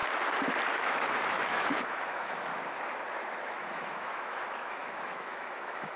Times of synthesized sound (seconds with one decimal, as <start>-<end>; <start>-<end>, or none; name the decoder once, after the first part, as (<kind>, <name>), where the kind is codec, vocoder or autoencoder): 0.8-2.5 (autoencoder, DAC-VAE); 3.5-6.0

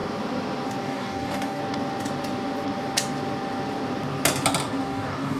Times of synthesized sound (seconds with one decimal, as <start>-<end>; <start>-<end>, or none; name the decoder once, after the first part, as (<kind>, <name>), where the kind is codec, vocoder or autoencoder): 0.8-1.6 (codec, DAC); 4.8-5.4

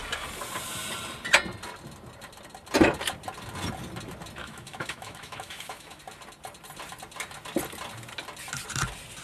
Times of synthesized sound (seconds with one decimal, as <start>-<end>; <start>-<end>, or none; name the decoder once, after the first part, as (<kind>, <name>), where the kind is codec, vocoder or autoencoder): 4.4-6.0 (autoencoder, DAC-VAE)

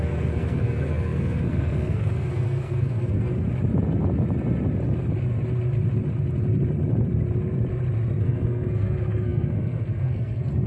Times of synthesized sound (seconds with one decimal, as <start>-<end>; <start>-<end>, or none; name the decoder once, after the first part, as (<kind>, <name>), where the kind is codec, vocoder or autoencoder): 0.0-3.3 (codec, SNAC); 8.2-10.7

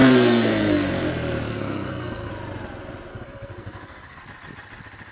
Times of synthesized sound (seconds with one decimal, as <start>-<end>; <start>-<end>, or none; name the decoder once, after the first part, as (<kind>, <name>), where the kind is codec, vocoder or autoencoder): 0.0-0.9 (codec, SNAC); 1.5-2.3; 3.1-4.2

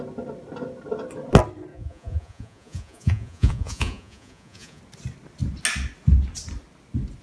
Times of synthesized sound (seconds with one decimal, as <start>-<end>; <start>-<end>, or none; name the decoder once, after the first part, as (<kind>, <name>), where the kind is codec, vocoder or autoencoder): 1.7-4.8 (vocoder, Vocos)

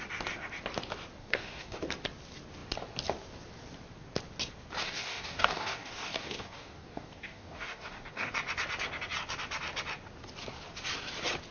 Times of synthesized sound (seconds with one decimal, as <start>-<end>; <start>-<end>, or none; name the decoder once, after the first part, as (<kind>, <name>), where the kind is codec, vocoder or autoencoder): 1.2-1.8 (codec, DAC); 4.8-8.3